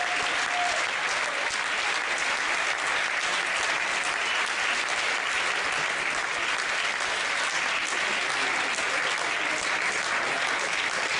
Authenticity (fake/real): real